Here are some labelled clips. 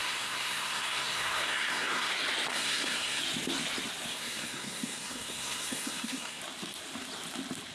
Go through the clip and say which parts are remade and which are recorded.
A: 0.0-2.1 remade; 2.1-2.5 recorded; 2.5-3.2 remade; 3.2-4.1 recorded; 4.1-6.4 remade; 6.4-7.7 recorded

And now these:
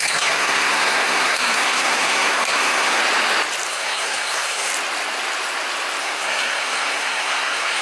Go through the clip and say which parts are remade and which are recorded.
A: 0.0-3.0 remade; 3.0-3.7 recorded; 3.7-4.7 remade; 4.7-6.0 recorded; 6.0-7.8 remade

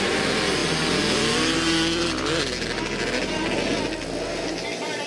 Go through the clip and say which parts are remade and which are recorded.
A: 0.0-5.1 recorded